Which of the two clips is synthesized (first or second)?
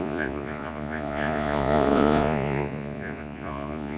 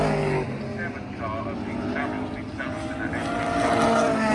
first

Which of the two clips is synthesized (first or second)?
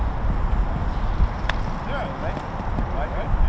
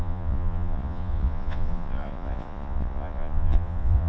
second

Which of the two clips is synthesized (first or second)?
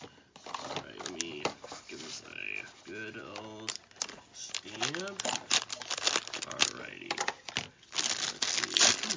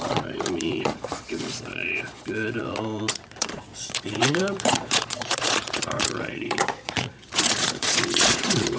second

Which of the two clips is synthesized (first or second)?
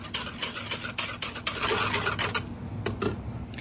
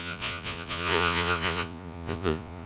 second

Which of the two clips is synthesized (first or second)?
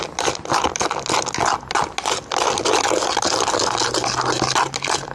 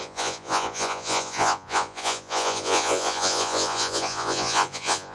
second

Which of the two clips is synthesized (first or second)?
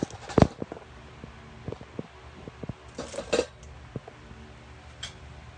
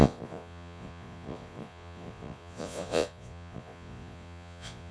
second